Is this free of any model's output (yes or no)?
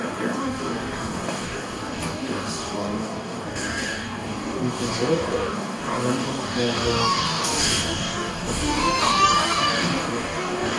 no